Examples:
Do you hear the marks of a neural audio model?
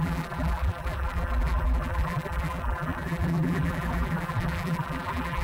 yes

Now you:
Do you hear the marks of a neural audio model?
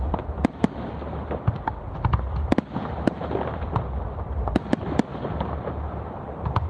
yes